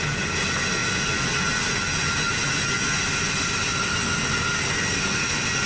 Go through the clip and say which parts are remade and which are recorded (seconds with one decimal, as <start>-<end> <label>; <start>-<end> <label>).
0.0-5.7 recorded